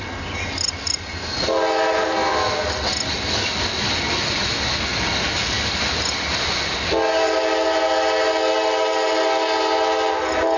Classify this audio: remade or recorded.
recorded